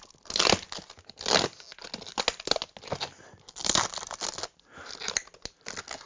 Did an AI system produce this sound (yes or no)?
no